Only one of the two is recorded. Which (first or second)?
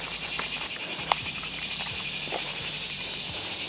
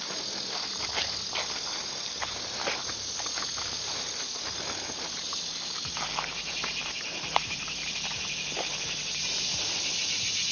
second